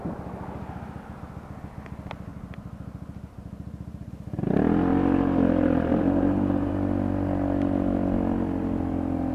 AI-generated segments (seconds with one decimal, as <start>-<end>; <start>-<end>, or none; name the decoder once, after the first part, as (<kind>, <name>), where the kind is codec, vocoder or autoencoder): 2.3-4.1 (vocoder, BigVGAN v2); 4.9-6.7